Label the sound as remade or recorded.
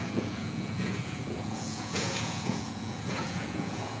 remade